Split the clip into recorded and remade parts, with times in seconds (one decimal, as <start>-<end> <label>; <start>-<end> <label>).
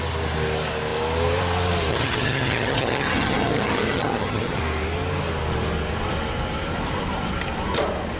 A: 0.0-1.9 recorded; 1.9-4.6 remade; 4.6-8.2 recorded